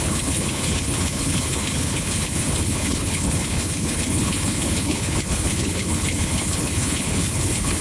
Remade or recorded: remade